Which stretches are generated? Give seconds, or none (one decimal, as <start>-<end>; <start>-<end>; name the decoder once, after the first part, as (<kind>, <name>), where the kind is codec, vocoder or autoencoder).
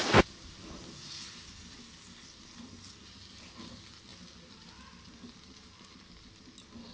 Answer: none